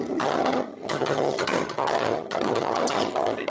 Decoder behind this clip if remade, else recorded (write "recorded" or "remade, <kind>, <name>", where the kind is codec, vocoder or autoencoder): remade, vocoder, HiFi-GAN